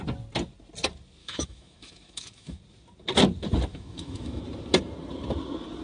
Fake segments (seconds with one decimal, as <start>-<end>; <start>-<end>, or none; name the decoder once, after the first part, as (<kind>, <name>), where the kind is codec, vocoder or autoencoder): 1.2-2.6 (autoencoder, DAC-VAE); 3.7-4.4